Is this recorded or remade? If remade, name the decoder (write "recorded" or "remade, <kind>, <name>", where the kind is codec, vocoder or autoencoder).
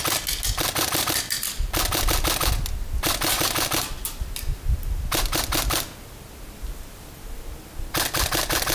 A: recorded